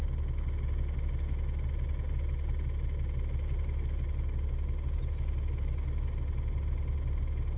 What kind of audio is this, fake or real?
real